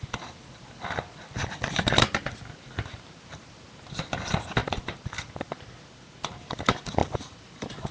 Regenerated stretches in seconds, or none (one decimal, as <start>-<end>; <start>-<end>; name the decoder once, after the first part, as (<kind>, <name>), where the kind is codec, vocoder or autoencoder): none

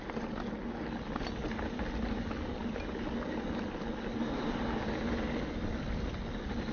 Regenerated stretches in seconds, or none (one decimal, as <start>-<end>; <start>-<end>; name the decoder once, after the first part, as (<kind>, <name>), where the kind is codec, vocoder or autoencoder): none

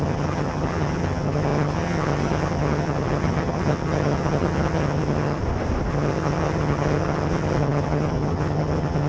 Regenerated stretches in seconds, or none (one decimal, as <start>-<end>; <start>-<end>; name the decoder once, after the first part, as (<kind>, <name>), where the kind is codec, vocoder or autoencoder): 0.0-5.4 (vocoder, HiFi-GAN); 5.9-9.1

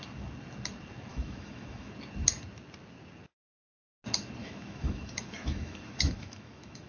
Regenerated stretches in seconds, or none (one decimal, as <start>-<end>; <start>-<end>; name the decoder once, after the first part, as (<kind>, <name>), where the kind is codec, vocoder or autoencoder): 1.1-1.9 (autoencoder, DAC-VAE); 4.4-6.9

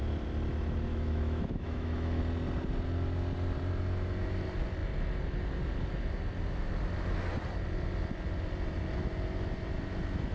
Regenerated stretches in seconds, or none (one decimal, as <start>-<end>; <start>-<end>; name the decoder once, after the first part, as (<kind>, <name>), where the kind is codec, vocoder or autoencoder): 0.9-2.2 (autoencoder, DAC-VAE)

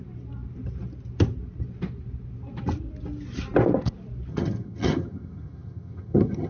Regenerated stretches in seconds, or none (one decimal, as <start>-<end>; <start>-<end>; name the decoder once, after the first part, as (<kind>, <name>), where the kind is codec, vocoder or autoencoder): 4.3-6.5 (vocoder, HiFi-GAN)

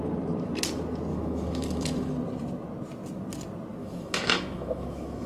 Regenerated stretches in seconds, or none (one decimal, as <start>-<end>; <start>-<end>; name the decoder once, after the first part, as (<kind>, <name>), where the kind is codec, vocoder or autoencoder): 1.1-2.1 (autoencoder, DAC-VAE); 3.8-5.3